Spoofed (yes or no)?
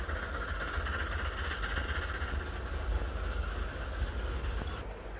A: no